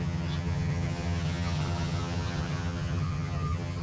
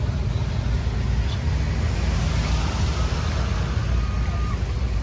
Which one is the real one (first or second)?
second